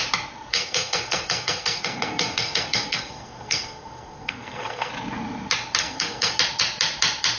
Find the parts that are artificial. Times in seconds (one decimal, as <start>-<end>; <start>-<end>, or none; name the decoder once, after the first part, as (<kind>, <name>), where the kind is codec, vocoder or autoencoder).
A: 0.5-4.9 (codec, SNAC); 5.8-6.4